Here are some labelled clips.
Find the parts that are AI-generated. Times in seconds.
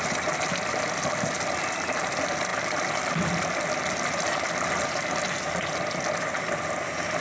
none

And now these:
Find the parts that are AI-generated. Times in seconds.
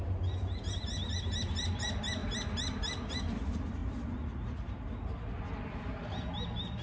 none